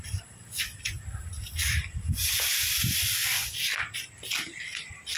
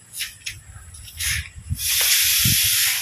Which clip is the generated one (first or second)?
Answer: first